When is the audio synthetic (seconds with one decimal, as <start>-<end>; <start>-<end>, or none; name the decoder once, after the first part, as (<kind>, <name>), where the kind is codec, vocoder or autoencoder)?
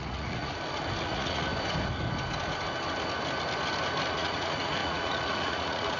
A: 0.0-0.5 (vocoder, Vocos); 1.0-1.5; 4.1-6.0